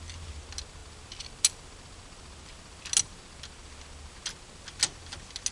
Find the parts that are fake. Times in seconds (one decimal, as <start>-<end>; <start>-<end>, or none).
none